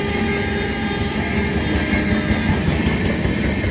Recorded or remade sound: recorded